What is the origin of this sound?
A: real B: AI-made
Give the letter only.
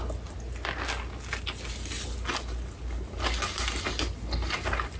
A